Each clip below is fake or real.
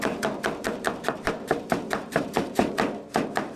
fake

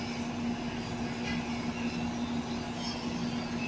real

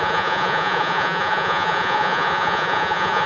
fake